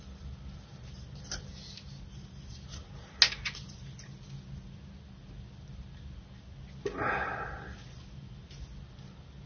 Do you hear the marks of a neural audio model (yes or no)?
no